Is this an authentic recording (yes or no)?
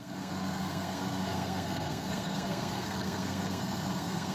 no